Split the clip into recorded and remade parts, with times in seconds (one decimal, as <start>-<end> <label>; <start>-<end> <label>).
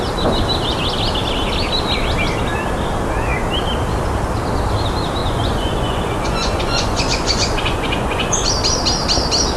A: 0.0-5.2 recorded; 5.2-8.5 remade; 8.5-9.6 recorded